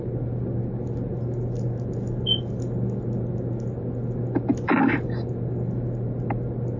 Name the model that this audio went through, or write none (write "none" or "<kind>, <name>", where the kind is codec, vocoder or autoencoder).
none